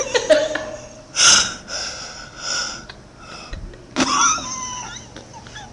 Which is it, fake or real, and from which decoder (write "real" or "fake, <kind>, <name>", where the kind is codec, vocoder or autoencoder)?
real